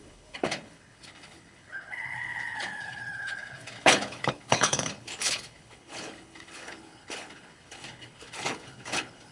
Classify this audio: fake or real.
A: fake